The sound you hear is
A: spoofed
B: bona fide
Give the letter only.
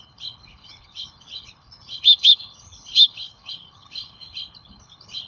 A